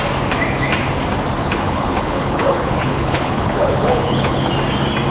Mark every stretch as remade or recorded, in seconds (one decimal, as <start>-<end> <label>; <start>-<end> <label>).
0.0-1.4 recorded; 1.4-4.5 remade; 4.5-5.1 recorded